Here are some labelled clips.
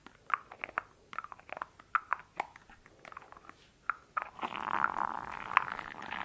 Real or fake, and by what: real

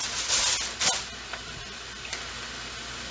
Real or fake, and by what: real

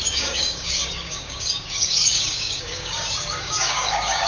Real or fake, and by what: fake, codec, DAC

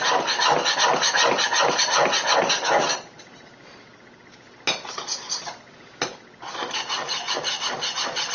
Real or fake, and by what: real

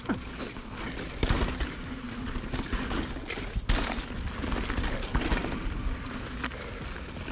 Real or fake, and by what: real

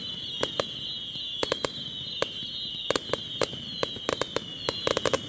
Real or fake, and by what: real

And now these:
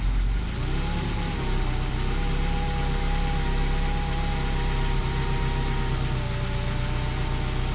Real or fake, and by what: real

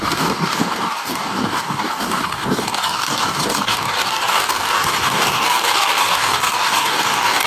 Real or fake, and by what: fake, codec, DAC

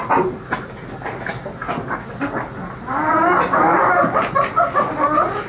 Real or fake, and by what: real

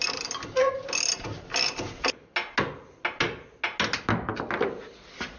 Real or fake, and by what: real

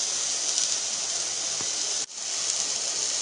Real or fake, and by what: real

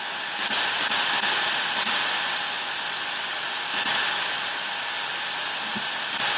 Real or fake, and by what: real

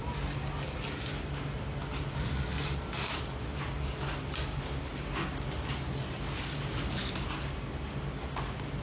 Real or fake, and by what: real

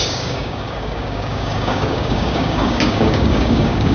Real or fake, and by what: fake, codec, DAC